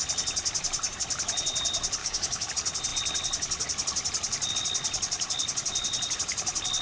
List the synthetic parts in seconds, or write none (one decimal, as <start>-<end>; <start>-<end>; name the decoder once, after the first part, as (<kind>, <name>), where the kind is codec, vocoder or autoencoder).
2.0-2.5 (codec, DAC)